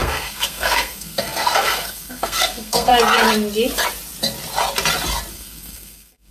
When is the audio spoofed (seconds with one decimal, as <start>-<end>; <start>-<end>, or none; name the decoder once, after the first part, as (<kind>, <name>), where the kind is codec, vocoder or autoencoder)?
0.0-2.9 (codec, SNAC); 5.3-6.3